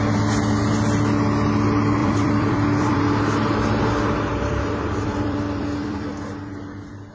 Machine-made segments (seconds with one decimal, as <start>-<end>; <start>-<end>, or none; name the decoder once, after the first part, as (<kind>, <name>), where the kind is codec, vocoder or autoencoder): 2.0-3.0 (vocoder, BigVGAN v2); 4.3-6.1